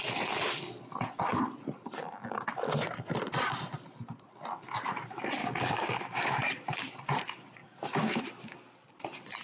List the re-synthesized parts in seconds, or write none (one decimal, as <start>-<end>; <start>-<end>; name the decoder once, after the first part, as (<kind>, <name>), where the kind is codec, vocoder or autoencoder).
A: 5.4-6.4 (codec, DAC); 7.6-8.2